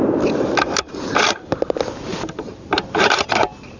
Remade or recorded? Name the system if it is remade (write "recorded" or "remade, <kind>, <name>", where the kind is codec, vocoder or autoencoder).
recorded